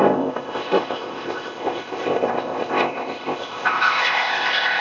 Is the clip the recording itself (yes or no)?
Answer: no